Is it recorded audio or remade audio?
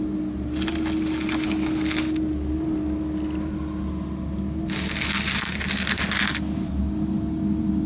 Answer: recorded